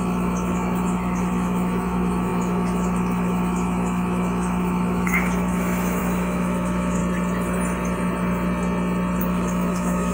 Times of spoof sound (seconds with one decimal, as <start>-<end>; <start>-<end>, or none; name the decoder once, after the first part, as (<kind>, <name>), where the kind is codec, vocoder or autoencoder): 0.0-7.0 (autoencoder, DAC-VAE); 9.2-10.1